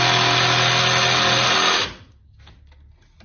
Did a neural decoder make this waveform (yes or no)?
no